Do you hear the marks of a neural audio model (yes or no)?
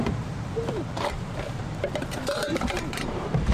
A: yes